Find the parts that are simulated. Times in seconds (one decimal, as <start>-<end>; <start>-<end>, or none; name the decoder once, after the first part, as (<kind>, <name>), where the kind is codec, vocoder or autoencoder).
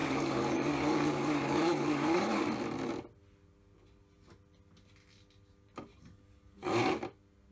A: 0.0-2.4 (codec, DAC); 5.9-6.7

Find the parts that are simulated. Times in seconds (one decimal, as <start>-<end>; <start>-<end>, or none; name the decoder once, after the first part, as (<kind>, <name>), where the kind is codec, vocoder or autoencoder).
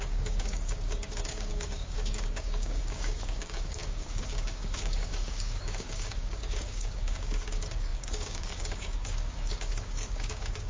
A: 0.0-10.7 (codec, DAC)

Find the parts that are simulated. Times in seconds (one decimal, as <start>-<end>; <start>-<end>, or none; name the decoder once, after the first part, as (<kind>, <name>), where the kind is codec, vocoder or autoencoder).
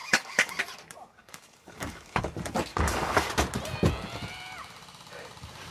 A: 0.0-0.6 (codec, DAC); 1.2-2.2; 2.7-3.3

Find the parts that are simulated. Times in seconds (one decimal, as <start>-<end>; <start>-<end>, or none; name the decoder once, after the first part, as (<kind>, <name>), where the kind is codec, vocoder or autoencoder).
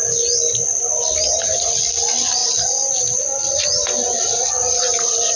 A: none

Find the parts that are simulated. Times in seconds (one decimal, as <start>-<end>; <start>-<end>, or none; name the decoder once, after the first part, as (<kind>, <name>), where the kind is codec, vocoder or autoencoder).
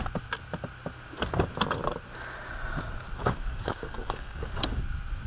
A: 3.2-4.8 (codec, DAC)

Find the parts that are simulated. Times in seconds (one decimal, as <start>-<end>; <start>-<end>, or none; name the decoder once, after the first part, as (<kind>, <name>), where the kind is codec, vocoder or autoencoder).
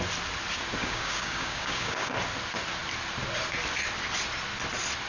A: 0.8-2.1 (codec, DAC)